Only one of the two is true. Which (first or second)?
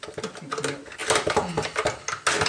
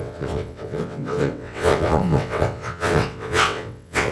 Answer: first